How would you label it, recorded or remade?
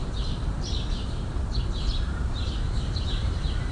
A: remade